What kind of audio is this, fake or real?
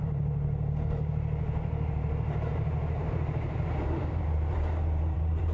fake